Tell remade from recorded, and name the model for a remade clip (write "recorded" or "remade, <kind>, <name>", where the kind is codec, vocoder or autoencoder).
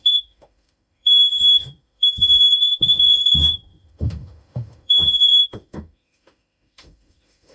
remade, autoencoder, DAC-VAE